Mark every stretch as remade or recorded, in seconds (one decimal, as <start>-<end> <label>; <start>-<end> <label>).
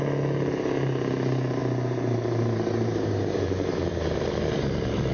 0.0-1.6 recorded; 1.6-5.1 remade